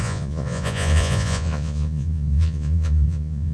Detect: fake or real fake